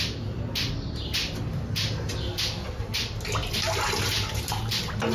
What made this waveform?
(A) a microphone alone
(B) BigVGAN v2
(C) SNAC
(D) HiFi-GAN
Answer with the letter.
A